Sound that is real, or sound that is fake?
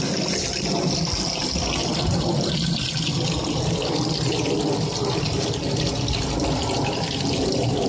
real